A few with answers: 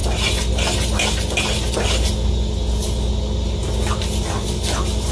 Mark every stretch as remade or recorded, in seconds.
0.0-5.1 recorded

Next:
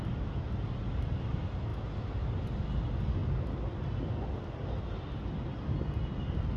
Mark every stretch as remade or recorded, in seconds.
0.0-6.6 recorded

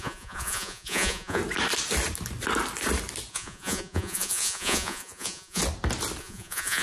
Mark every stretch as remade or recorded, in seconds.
0.0-1.4 remade; 1.4-3.3 recorded; 3.3-5.6 remade; 5.6-6.2 recorded; 6.2-6.8 remade